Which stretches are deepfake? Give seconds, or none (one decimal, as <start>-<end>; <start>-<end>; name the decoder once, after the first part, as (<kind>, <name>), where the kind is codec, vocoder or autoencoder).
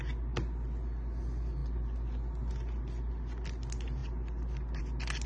none